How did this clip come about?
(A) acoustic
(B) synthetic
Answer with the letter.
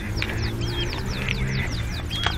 A